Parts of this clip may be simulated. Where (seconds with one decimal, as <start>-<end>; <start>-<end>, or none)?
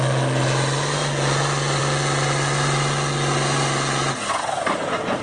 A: none